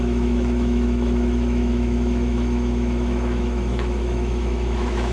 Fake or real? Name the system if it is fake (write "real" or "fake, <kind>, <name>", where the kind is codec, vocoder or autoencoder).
fake, autoencoder, DAC-VAE